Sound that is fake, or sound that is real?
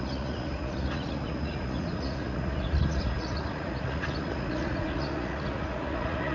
fake